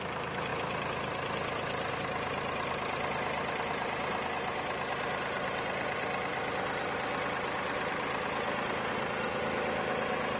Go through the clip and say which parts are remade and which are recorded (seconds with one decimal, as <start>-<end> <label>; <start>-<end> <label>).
0.0-10.4 recorded